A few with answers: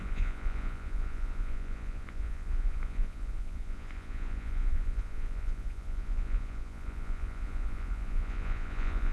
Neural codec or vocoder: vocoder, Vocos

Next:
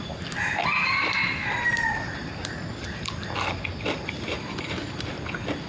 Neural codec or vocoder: none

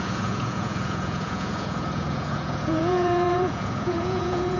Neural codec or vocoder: vocoder, Vocos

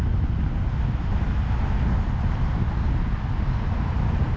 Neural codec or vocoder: none